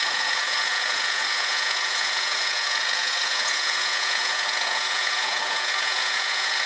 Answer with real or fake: fake